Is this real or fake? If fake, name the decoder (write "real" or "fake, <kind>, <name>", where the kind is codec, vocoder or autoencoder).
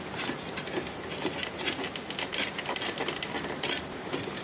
real